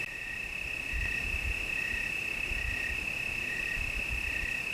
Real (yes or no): yes